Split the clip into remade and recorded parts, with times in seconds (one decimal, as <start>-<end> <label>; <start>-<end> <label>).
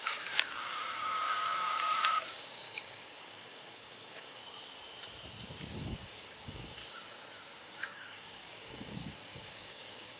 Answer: 0.0-4.4 remade; 4.4-5.7 recorded; 5.7-6.8 remade; 6.8-7.6 recorded; 7.6-10.2 remade